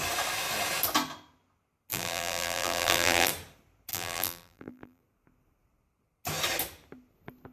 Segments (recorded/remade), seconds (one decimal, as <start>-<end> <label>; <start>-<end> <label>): 0.0-1.9 recorded; 1.9-3.3 remade; 3.3-3.9 recorded; 3.9-5.0 remade; 5.0-7.5 recorded